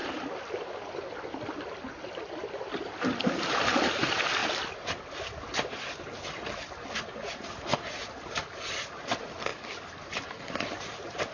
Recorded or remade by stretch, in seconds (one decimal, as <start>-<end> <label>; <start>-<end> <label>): 0.0-3.9 remade; 3.9-11.3 recorded